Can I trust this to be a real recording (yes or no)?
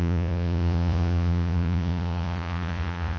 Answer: no